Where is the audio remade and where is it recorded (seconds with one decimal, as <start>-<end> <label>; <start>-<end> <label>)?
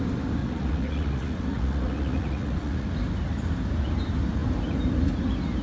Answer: 0.0-0.4 recorded; 0.4-2.9 remade; 2.9-5.6 recorded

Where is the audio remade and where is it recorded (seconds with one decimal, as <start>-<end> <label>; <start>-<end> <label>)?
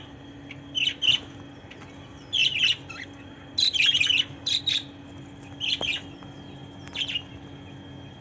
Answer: 0.0-8.2 recorded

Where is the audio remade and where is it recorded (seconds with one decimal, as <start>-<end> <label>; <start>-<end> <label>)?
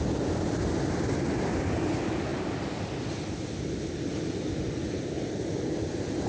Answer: 0.0-6.3 recorded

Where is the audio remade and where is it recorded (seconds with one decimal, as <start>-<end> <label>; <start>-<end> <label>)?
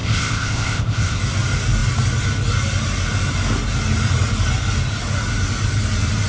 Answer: 0.0-1.2 remade; 1.2-6.3 recorded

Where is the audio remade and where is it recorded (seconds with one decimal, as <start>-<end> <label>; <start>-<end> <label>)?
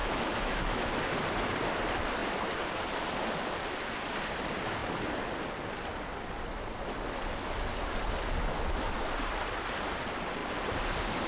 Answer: 0.0-0.9 remade; 0.9-11.3 recorded